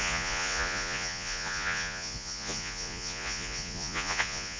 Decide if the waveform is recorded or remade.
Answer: remade